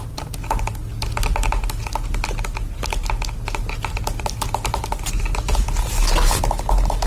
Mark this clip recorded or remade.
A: recorded